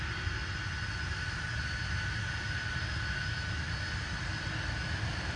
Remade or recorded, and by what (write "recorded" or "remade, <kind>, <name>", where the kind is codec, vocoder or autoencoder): recorded